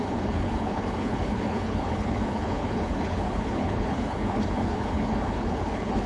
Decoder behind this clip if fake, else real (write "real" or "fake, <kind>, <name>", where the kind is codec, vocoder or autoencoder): fake, codec, HILCodec